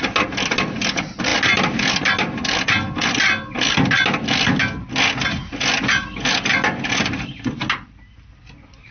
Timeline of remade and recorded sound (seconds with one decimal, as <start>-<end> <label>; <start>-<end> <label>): 0.0-8.9 recorded